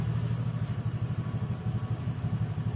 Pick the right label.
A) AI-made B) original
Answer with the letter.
B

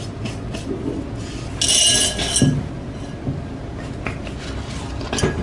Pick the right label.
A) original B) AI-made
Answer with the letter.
A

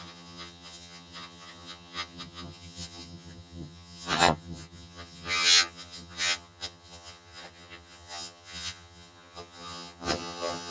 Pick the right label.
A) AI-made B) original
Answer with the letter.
A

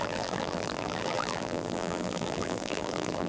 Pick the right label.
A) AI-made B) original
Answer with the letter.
A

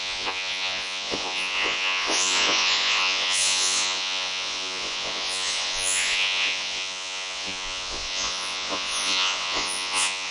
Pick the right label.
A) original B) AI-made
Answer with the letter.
B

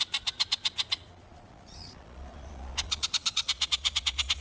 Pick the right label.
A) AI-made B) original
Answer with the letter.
A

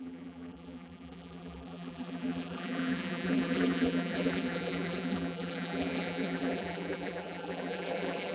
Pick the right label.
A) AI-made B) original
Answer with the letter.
A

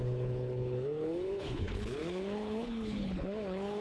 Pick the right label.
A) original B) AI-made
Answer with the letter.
B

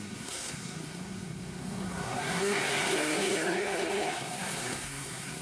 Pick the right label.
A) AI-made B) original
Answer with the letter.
A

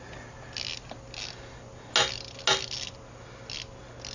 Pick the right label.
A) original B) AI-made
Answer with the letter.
A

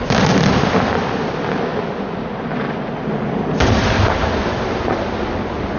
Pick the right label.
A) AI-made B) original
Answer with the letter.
B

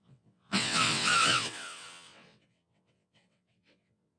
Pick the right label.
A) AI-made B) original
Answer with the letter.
A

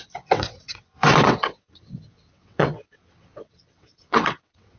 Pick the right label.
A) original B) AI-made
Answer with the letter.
B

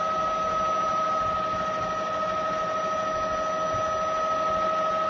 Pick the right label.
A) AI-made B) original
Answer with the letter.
B